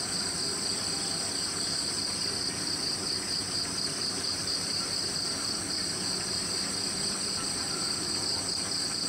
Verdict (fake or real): real